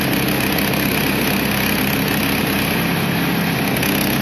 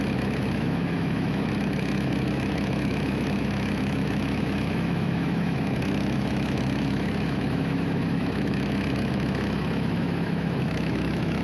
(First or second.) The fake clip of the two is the second